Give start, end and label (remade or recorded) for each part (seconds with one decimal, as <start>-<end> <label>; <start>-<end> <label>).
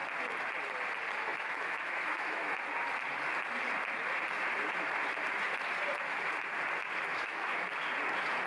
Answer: 0.0-1.3 recorded; 1.3-2.5 remade; 2.5-7.1 recorded; 7.1-7.7 remade; 7.7-8.5 recorded